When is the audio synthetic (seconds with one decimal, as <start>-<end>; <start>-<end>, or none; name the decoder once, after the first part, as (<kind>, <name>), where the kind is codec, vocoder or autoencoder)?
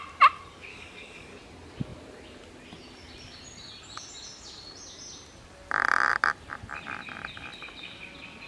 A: 0.7-1.4 (codec, DAC)